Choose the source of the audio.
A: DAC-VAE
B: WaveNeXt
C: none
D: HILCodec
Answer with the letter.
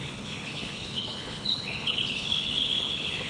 D